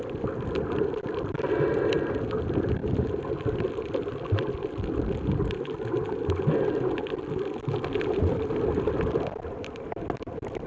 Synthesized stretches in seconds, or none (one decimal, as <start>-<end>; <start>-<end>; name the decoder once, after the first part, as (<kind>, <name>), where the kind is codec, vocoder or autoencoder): none